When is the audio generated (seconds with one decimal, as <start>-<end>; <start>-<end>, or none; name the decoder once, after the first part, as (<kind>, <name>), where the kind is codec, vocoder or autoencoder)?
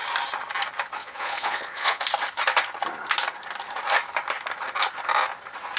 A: 1.0-2.0 (vocoder, Vocos)